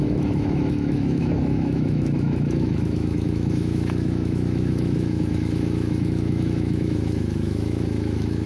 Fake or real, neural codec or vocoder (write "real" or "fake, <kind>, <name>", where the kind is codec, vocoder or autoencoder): fake, autoencoder, DAC-VAE